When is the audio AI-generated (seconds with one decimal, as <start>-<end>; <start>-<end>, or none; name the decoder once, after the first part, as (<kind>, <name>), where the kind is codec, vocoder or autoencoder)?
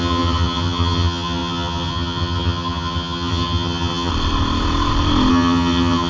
0.0-4.1 (vocoder, HiFi-GAN); 5.3-6.1